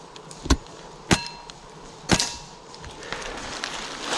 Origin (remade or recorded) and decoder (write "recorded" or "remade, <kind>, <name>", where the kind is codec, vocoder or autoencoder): recorded